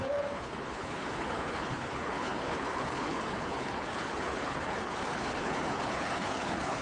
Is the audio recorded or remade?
remade